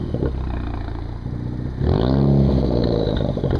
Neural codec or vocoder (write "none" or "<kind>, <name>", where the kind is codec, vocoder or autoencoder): none